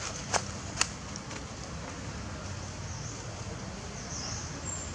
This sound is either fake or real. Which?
real